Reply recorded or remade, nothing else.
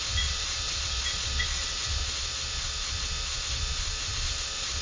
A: remade